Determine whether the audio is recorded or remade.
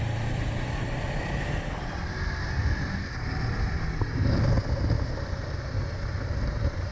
recorded